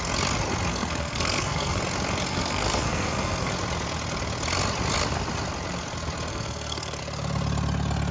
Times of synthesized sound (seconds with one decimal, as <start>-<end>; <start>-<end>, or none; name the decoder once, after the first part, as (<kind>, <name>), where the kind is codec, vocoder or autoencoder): 0.7-1.8 (codec, SNAC); 2.3-3.5; 6.3-7.0

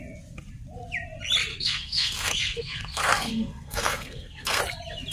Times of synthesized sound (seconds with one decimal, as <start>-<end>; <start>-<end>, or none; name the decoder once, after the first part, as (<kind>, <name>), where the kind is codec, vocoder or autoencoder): 1.5-4.6 (codec, SNAC)

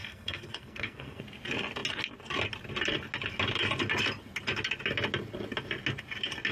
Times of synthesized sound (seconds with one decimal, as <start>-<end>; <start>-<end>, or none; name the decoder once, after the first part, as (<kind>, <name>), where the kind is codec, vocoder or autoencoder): 0.0-1.2 (codec, SNAC)

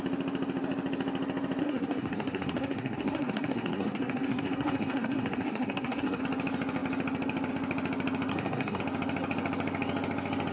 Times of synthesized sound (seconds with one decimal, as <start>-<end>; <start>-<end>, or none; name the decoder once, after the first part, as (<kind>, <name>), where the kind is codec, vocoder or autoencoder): 1.6-6.2 (codec, SNAC); 8.3-8.8

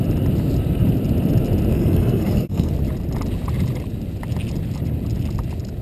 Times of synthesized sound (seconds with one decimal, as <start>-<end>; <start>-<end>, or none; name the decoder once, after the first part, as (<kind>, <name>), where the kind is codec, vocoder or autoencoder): 1.7-2.7 (codec, SNAC)

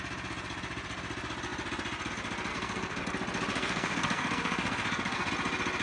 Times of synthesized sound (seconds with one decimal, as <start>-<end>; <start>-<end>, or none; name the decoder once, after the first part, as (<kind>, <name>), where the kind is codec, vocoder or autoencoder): 2.5-3.0 (codec, SNAC); 3.5-5.3

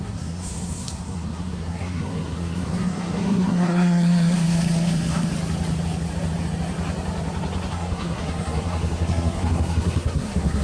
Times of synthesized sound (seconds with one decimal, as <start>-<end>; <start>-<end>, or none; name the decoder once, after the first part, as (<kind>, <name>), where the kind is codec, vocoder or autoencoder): 0.0-5.3 (codec, SNAC); 7.7-10.6